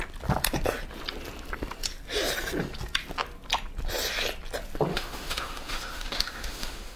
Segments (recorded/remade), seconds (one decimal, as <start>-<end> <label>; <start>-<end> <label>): 0.0-4.9 recorded; 4.9-7.0 remade